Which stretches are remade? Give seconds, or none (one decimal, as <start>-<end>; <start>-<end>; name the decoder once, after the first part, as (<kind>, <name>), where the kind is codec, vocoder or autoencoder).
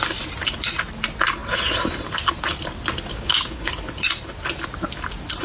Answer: 3.1-3.7 (codec, DAC)